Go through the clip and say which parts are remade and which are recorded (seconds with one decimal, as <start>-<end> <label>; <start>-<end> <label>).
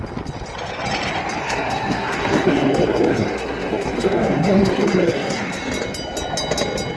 0.0-1.4 recorded; 1.4-5.6 remade; 5.6-7.0 recorded